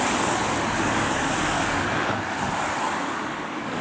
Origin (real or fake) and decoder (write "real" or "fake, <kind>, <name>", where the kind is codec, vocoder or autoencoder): fake, codec, DAC